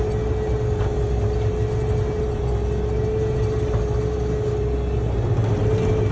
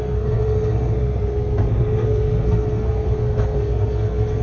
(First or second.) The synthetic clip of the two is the second